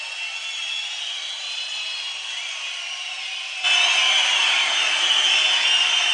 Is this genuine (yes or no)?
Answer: yes